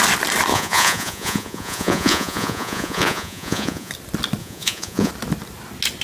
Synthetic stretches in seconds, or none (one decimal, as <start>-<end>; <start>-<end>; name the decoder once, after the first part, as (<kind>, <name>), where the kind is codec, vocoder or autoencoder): 0.5-3.9 (vocoder, Vocos); 4.4-5.1